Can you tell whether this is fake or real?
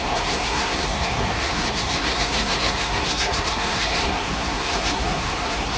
fake